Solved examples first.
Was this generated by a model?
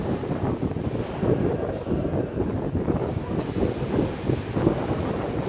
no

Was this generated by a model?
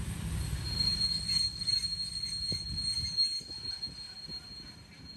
no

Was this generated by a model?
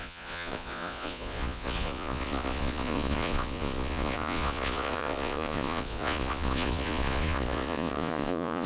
yes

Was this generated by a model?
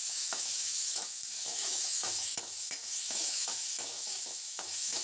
yes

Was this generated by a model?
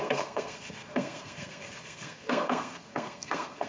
yes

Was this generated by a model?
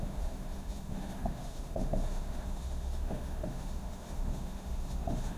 yes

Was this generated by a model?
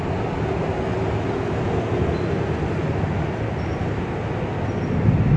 no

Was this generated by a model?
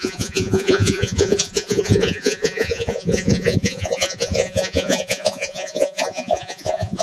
yes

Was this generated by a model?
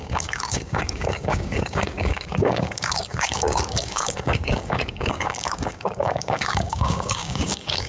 yes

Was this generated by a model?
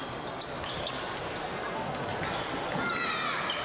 no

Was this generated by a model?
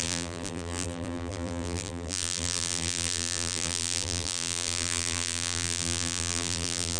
yes